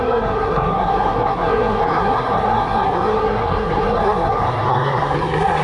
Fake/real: fake